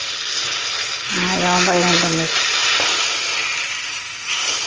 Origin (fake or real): real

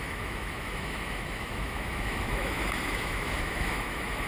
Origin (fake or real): fake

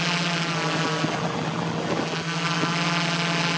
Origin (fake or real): real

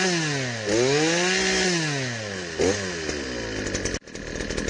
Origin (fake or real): real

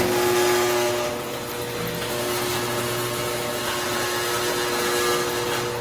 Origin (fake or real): real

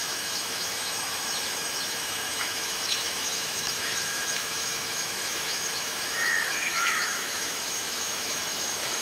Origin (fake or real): fake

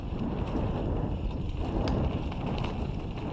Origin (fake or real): real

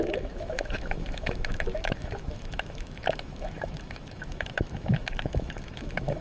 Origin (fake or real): fake